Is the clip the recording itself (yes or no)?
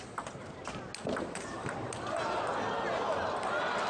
yes